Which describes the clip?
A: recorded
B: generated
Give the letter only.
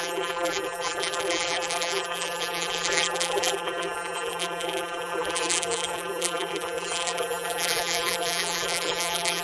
B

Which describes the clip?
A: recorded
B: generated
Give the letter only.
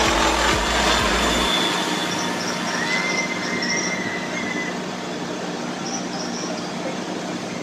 A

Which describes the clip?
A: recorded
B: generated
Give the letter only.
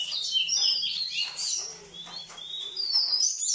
B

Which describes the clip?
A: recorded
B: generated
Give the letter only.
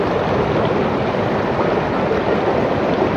A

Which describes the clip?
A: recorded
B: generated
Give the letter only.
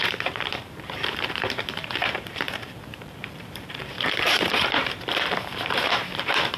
B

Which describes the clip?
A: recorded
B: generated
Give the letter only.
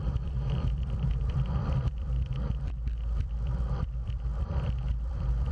B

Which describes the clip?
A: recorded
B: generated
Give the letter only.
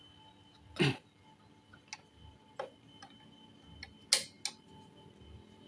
A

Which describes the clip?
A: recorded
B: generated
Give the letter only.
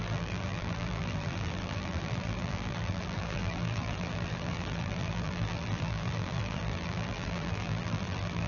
B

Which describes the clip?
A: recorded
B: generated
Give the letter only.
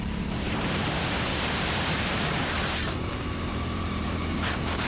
B